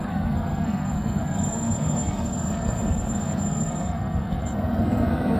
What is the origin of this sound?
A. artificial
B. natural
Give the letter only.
A